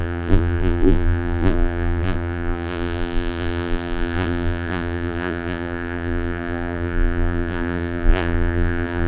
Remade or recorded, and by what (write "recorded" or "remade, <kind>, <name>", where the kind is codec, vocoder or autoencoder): remade, vocoder, BigVGAN v2